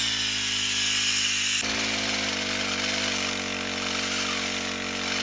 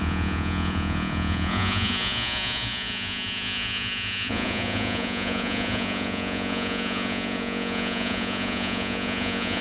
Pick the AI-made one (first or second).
second